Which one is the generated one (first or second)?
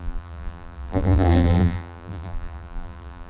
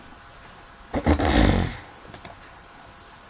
first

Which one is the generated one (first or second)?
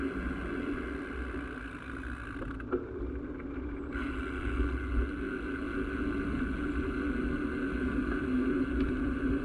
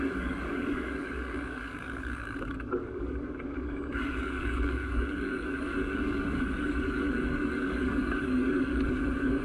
second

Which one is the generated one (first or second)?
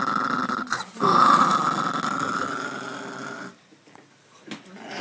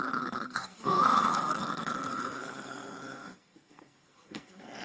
second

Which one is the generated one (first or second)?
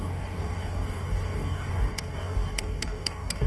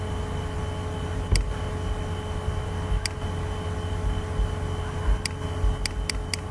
first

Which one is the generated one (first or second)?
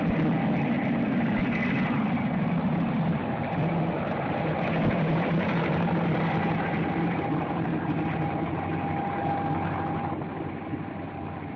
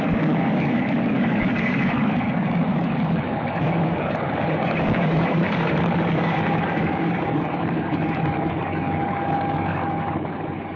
second